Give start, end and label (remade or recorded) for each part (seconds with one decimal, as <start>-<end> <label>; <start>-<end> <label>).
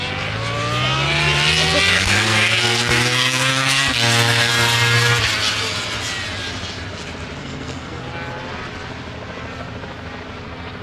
0.0-1.9 recorded; 1.9-4.5 remade; 4.5-7.4 recorded; 7.4-8.0 remade; 8.0-10.8 recorded